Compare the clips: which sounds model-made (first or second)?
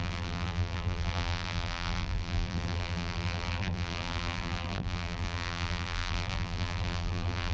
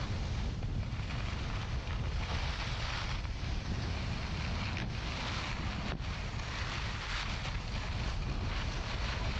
first